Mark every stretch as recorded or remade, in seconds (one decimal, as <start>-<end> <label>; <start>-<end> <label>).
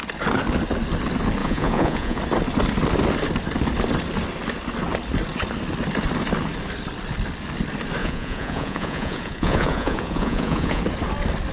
0.0-1.4 recorded; 1.4-2.2 remade; 2.2-8.0 recorded; 8.0-10.8 remade; 10.8-11.5 recorded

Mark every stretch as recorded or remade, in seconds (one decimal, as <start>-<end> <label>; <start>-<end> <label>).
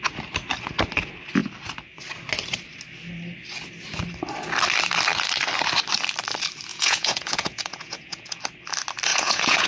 0.0-6.7 recorded; 6.7-8.4 remade; 8.4-9.1 recorded; 9.1-9.7 remade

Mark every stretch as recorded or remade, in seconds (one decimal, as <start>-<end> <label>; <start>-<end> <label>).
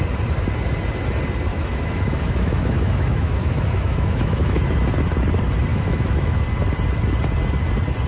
0.0-1.5 recorded; 1.5-4.6 remade; 4.6-5.7 recorded; 5.7-6.4 remade; 6.4-8.1 recorded